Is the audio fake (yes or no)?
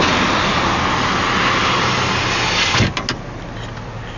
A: no